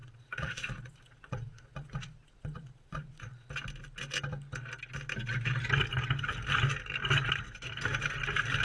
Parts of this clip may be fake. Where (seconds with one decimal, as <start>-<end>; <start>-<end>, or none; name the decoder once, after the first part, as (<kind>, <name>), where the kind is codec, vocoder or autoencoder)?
0.0-3.5 (vocoder, Vocos)